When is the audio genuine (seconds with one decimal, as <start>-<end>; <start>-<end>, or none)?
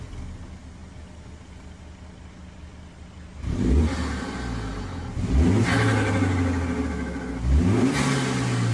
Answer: 0.0-8.7